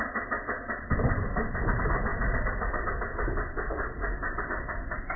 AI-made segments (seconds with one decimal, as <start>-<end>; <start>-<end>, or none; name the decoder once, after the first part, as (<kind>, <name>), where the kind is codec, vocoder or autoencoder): none